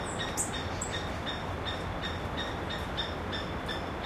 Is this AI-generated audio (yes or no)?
no